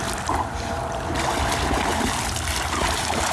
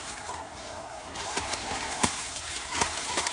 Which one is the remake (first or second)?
second